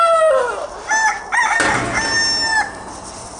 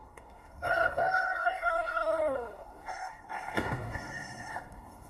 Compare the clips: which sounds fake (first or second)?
second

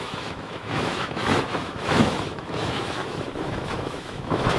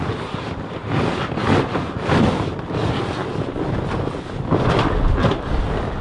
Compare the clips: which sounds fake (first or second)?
first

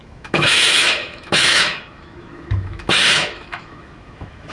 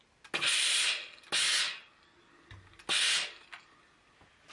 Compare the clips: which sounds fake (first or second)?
first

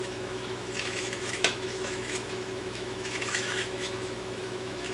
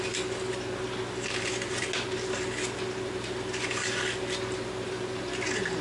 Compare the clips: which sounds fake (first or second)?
first